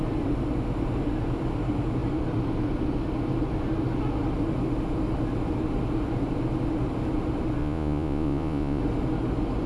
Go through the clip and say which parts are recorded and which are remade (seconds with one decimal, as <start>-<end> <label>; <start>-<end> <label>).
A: 0.0-7.6 recorded; 7.6-8.8 remade; 8.8-9.7 recorded